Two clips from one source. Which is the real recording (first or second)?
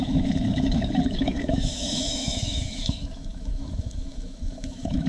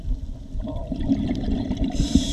second